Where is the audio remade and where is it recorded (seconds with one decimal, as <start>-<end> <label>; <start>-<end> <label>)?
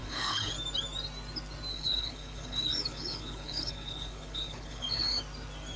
0.0-0.5 remade; 0.5-1.7 recorded; 1.7-5.2 remade; 5.2-5.8 recorded